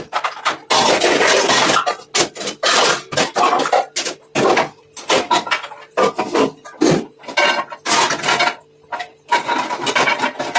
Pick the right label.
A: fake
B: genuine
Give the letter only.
B